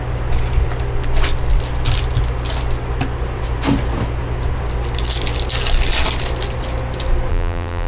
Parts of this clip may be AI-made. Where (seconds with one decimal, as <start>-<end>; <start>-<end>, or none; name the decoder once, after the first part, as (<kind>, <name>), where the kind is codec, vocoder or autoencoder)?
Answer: 7.3-7.9 (vocoder, BigVGAN v2)